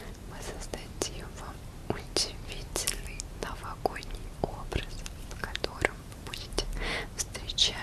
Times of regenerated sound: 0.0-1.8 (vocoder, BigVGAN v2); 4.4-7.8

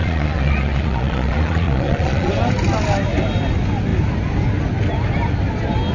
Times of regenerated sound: 0.0-2.3 (vocoder, Vocos)

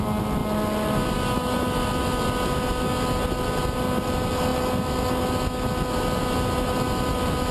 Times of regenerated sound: none

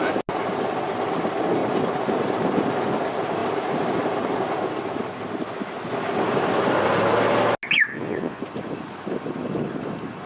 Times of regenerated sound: 7.9-8.4 (vocoder, Vocos)

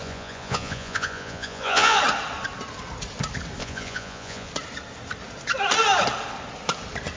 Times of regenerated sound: 0.0-2.0 (vocoder, Vocos); 3.6-4.5

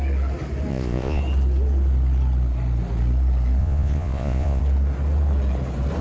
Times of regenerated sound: 0.7-1.2 (vocoder, Vocos); 3.6-4.6

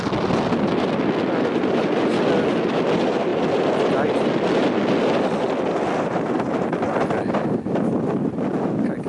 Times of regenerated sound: none